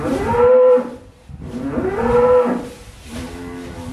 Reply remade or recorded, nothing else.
remade